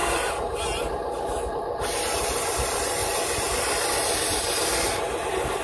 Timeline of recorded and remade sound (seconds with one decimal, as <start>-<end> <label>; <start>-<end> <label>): 0.0-5.6 recorded